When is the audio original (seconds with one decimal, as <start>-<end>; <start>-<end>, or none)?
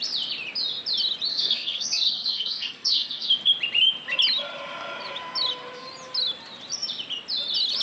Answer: 0.0-1.3; 3.3-7.8